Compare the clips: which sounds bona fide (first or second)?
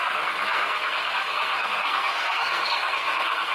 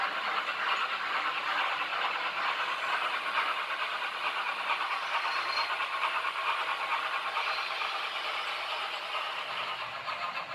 second